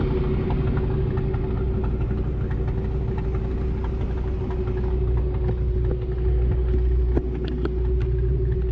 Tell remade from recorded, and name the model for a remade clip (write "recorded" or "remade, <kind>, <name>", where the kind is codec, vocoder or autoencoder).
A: recorded